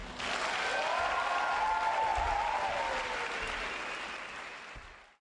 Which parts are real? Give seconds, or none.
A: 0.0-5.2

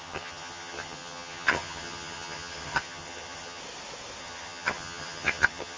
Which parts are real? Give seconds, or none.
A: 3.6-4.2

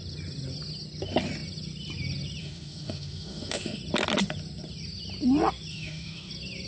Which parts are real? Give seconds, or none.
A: 0.0-2.4; 3.8-5.7; 6.3-6.7

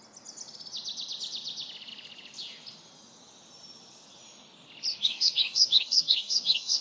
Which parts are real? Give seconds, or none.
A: 0.0-4.9

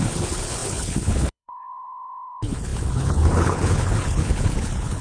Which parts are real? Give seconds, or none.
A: none

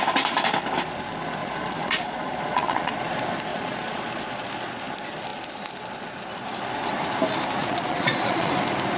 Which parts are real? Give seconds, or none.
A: 0.0-1.4; 2.9-3.5; 4.1-7.6; 8.5-9.0

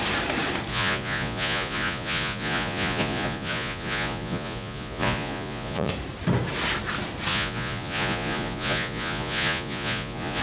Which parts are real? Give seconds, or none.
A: 0.0-0.7; 5.9-7.3